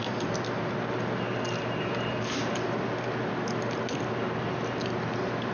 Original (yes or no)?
yes